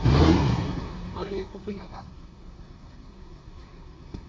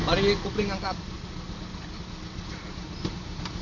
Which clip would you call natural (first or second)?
second